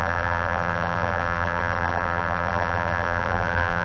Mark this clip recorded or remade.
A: remade